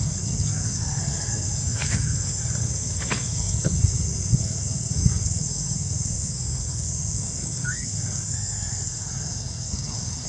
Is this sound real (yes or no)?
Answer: no